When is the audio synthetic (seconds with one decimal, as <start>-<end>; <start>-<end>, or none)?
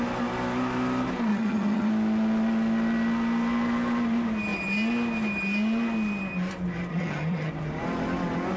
1.3-1.9; 6.9-7.5